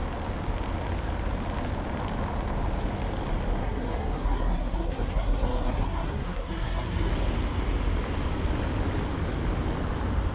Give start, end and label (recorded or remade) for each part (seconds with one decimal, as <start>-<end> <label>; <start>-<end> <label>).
0.0-3.6 recorded; 3.6-7.1 remade; 7.1-10.3 recorded